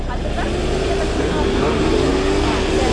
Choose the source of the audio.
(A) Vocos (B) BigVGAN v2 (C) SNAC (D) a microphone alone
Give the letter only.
D